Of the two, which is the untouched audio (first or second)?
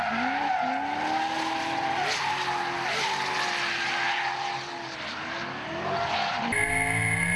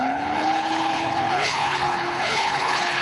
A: first